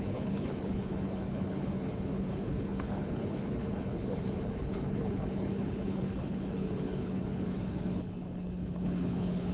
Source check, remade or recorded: remade